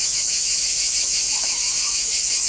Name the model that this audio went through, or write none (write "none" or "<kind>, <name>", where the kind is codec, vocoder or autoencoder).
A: autoencoder, DAC-VAE